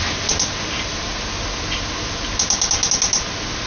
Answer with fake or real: real